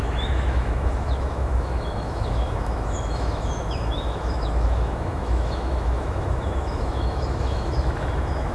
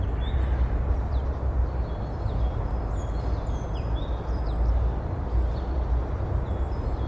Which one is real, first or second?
second